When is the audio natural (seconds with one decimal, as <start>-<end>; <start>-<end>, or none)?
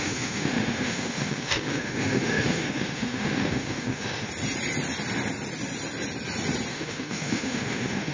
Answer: 4.3-6.7